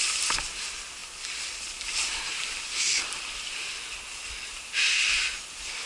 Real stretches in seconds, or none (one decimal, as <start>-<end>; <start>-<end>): 0.0-5.9